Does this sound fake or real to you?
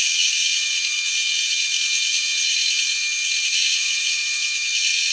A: fake